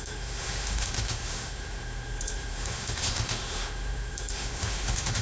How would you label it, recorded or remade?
remade